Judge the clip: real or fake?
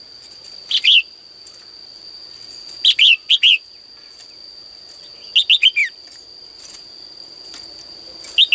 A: real